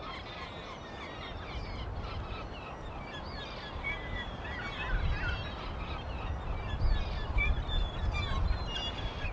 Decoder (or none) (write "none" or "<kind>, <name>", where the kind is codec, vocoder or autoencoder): none